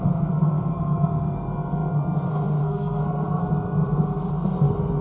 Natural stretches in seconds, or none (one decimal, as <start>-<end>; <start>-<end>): 3.4-4.3